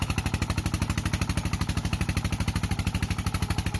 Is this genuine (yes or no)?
yes